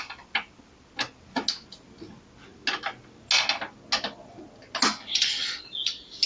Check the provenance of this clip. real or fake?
real